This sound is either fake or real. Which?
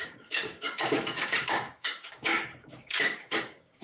fake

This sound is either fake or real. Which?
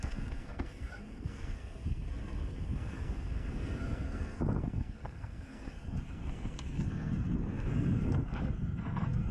fake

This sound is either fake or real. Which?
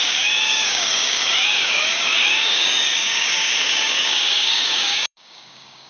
fake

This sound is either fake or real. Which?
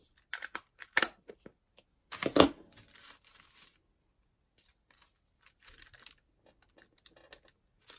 real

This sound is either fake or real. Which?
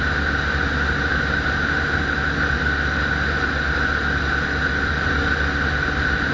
real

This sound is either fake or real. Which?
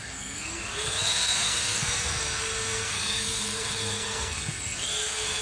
fake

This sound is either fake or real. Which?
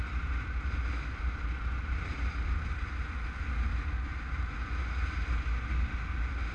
real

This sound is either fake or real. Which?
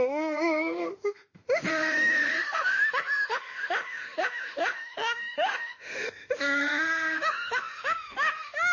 fake